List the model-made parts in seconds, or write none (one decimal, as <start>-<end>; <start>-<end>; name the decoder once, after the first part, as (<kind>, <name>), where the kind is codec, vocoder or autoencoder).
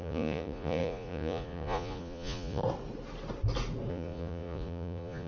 0.0-2.6 (vocoder, Vocos); 3.9-5.3